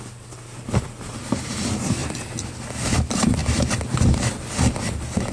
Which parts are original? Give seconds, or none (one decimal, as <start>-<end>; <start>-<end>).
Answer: 0.0-5.3